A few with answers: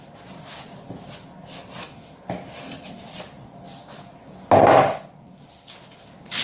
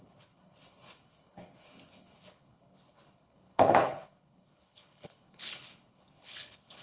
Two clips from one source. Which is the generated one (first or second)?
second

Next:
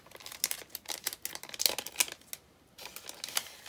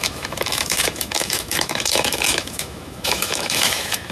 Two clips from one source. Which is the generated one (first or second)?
second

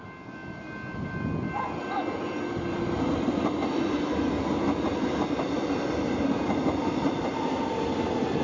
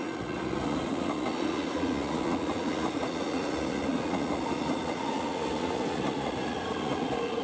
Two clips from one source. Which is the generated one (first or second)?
second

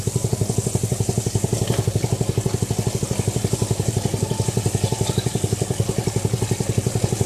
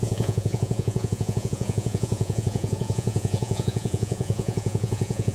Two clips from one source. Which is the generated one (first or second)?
second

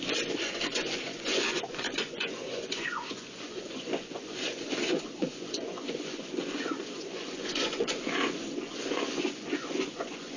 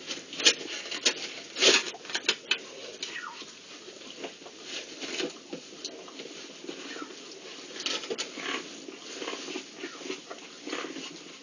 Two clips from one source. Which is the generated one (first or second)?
first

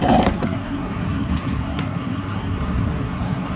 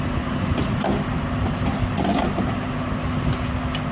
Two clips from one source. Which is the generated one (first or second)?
first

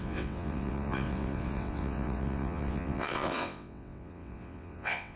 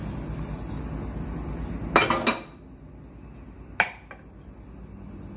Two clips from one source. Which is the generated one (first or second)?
first